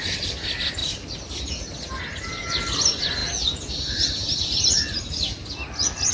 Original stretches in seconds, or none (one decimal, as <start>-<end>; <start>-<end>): 0.0-6.1